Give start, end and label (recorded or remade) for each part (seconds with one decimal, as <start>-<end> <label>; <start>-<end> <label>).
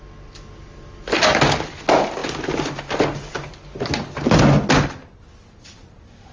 0.0-6.3 recorded